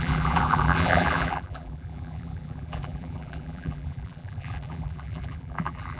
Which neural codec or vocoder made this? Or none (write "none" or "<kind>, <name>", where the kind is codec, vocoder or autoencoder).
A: vocoder, BigVGAN v2